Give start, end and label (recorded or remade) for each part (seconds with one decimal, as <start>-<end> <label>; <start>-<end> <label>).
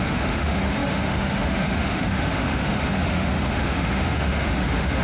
0.0-5.0 remade